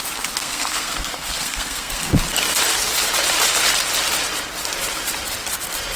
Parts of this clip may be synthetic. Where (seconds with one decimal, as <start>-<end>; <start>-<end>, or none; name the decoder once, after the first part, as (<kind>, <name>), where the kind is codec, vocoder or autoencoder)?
0.4-2.1 (codec, SNAC)